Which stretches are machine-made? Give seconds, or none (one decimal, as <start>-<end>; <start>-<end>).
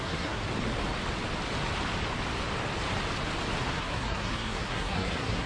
0.0-0.4; 3.7-5.5